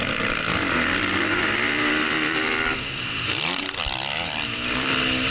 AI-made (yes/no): yes